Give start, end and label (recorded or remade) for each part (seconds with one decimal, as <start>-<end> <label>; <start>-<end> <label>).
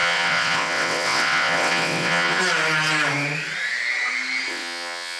0.0-2.4 remade; 2.4-4.5 recorded; 4.5-5.2 remade